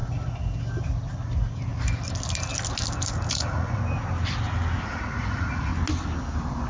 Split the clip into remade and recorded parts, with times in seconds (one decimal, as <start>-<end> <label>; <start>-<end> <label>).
0.0-3.3 recorded; 3.3-3.8 remade; 3.8-4.9 recorded; 4.9-5.7 remade; 5.7-6.7 recorded